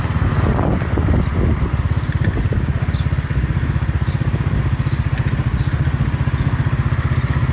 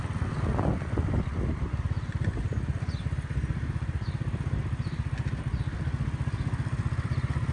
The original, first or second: first